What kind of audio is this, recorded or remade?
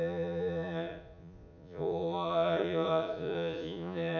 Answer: remade